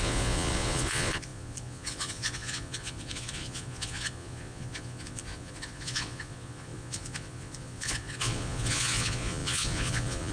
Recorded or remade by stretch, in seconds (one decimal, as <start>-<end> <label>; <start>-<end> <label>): 0.0-10.3 remade